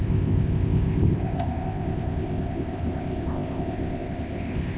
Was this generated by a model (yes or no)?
yes